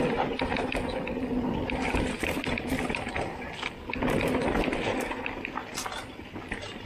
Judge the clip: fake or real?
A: real